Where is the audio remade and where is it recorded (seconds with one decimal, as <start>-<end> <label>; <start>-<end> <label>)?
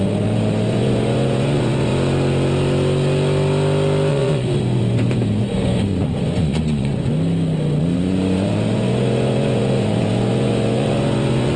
0.0-1.9 remade; 1.9-4.1 recorded; 4.1-6.9 remade; 6.9-7.8 recorded; 7.8-11.6 remade